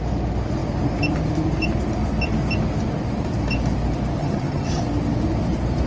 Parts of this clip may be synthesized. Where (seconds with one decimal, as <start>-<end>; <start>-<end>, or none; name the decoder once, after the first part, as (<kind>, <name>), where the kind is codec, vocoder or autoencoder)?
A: 4.2-4.8 (vocoder, HiFi-GAN)